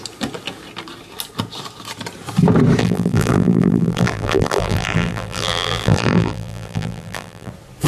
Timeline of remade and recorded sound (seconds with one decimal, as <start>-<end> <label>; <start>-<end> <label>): 0.0-2.8 recorded; 2.8-7.5 remade; 7.5-7.9 recorded